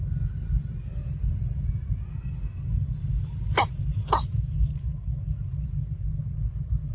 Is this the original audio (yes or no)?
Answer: yes